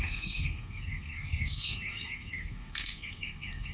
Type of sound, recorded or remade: remade